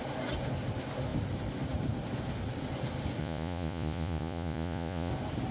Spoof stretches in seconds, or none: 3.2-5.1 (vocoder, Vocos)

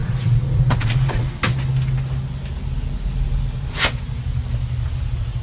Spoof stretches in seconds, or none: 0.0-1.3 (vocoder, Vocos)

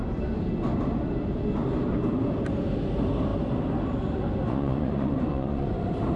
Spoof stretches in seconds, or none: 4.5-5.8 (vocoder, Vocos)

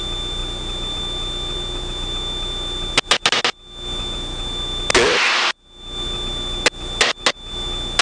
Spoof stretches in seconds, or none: none

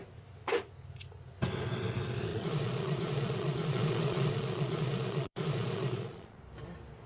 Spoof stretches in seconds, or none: 2.3-6.4 (vocoder, Vocos)